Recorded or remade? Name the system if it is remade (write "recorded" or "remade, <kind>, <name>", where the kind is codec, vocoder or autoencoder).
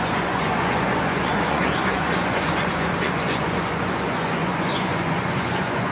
remade, vocoder, Vocos